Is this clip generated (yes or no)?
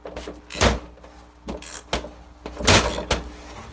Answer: no